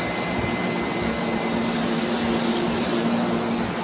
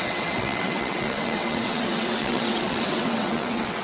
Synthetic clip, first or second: second